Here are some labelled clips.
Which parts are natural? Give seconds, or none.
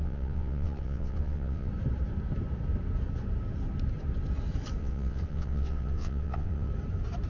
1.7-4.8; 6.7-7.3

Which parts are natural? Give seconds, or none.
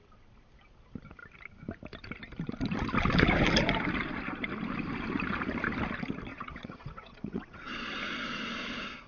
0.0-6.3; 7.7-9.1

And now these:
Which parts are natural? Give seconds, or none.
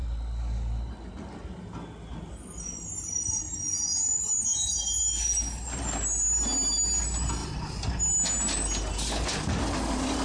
0.0-10.2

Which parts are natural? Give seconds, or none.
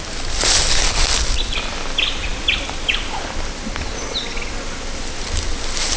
0.0-6.0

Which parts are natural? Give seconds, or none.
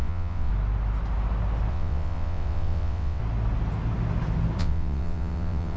0.5-1.7; 3.2-4.6